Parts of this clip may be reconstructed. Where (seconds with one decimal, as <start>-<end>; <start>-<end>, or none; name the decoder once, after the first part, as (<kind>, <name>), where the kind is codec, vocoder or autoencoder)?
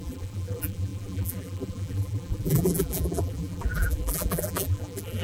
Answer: 0.0-5.2 (vocoder, BigVGAN v2)